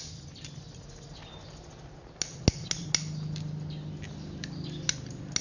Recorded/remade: recorded